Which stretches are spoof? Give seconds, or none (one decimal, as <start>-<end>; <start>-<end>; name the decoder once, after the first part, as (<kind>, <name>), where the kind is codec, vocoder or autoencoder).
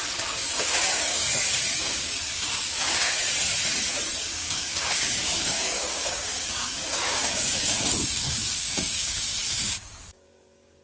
0.0-1.2 (codec, DAC); 1.8-3.2; 4.2-10.8